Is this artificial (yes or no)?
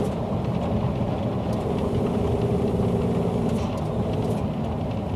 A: no